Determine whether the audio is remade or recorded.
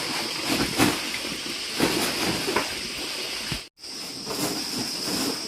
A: recorded